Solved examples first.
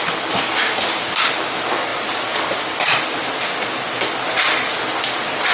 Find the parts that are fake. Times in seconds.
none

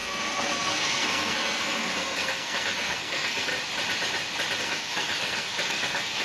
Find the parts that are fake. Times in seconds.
0.0-3.5 (codec, SNAC); 4.6-6.2